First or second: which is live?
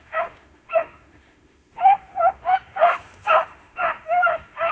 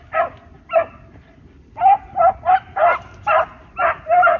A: second